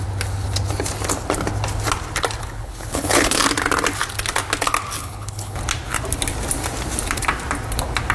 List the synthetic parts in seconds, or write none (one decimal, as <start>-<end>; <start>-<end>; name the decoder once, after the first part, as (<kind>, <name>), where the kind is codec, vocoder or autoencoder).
2.4-3.4 (codec, HILCodec); 5.0-5.6